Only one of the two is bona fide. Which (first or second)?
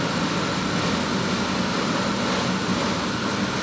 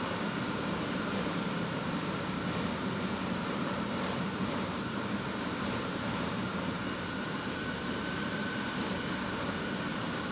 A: first